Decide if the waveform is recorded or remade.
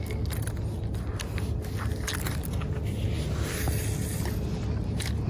recorded